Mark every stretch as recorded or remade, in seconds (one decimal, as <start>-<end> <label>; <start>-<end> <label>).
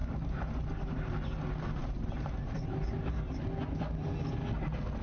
0.0-1.1 remade; 1.1-1.8 recorded; 1.8-3.4 remade; 3.4-5.0 recorded